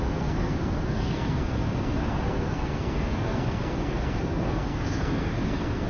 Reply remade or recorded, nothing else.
remade